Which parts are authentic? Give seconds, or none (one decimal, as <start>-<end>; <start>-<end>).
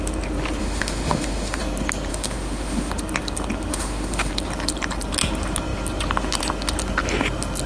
0.0-0.6; 1.6-2.1; 2.9-3.7; 4.3-7.7